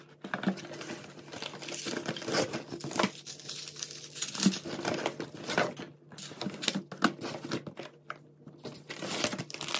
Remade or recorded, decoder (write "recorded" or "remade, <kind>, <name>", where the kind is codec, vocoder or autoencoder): recorded